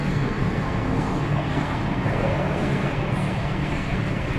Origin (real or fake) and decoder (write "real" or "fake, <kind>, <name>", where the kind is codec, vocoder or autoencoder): fake, codec, SNAC